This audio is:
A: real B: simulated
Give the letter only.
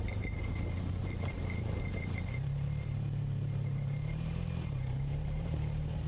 B